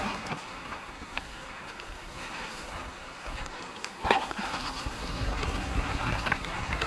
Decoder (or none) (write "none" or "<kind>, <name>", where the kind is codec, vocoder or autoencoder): codec, SNAC